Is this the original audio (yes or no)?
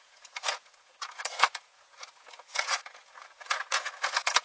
no